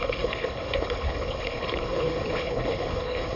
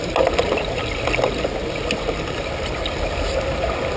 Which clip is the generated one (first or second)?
first